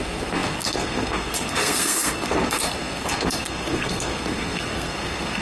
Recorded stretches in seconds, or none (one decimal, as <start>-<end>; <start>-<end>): none